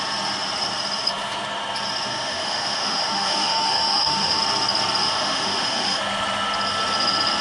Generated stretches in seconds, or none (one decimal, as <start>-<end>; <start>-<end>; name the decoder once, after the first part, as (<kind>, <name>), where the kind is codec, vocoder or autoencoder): 2.1-4.4 (autoencoder, DAC-VAE); 5.0-6.0